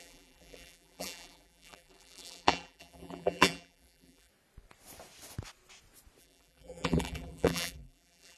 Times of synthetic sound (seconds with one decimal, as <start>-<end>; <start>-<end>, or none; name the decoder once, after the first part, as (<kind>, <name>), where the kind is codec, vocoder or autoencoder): 0.0-4.3 (vocoder, BigVGAN v2); 6.2-8.4

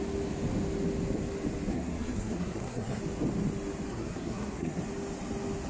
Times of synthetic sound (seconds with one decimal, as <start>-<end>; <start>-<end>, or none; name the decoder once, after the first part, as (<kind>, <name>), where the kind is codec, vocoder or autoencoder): 1.7-3.0 (codec, SNAC); 3.9-4.8

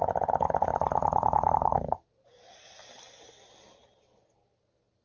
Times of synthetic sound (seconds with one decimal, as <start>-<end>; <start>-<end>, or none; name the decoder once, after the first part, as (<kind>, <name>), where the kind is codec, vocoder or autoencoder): 0.7-1.5 (vocoder, BigVGAN v2)